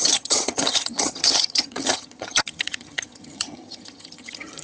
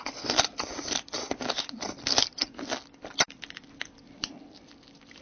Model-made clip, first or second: first